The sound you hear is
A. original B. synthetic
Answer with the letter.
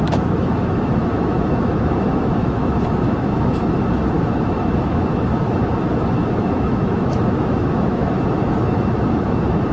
B